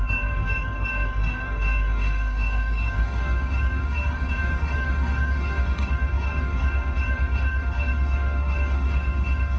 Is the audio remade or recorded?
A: remade